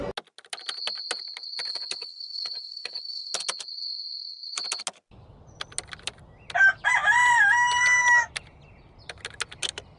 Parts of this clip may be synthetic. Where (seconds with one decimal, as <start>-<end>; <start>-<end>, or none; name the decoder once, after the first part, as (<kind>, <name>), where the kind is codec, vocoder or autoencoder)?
1.7-3.3 (codec, HILCodec)